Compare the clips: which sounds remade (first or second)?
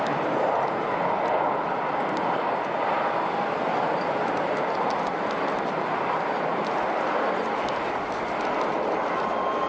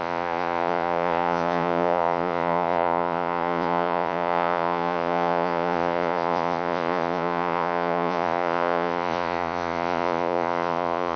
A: second